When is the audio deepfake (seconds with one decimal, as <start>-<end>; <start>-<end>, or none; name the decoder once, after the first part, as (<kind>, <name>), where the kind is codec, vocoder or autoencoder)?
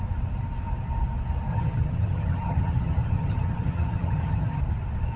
1.5-4.6 (vocoder, HiFi-GAN)